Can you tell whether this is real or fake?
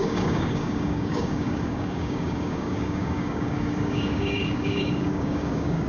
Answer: fake